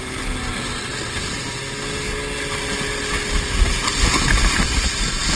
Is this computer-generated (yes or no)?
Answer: no